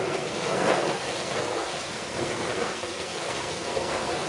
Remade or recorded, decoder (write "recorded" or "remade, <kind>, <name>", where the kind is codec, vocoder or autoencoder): remade, codec, SNAC